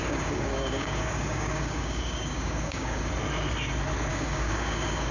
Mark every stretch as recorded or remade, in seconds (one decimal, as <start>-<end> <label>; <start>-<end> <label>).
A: 0.0-3.1 remade; 3.1-4.1 recorded; 4.1-5.1 remade

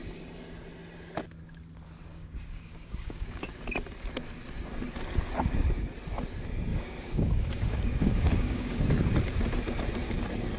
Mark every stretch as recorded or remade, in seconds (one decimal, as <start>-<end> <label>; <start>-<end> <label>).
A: 0.0-2.1 recorded; 2.1-3.5 remade; 3.5-6.7 recorded; 6.7-8.8 remade; 8.8-10.6 recorded

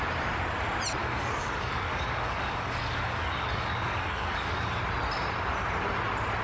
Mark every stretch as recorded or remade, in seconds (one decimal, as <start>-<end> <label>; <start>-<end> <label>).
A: 0.0-1.0 recorded; 1.0-4.8 remade; 4.8-6.4 recorded